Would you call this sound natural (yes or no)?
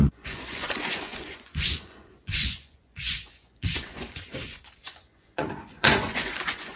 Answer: no